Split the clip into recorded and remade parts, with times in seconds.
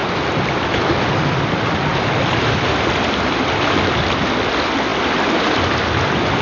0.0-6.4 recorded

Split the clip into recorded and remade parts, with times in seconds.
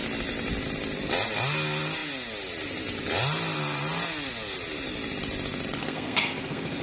0.0-5.8 recorded; 5.8-6.8 remade